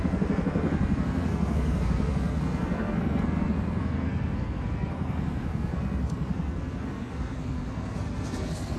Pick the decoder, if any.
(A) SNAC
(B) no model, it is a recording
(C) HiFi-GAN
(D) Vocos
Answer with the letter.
A